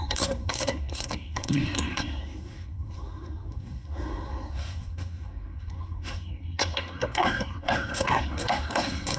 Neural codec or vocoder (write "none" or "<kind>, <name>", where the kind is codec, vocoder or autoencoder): codec, SNAC